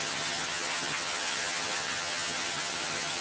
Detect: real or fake fake